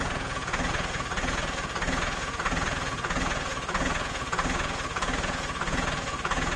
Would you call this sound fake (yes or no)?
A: yes